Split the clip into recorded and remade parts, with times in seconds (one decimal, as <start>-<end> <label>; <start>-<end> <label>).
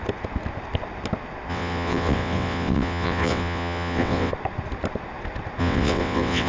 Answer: 0.0-1.5 recorded; 1.5-4.3 remade; 4.3-5.6 recorded; 5.6-6.5 remade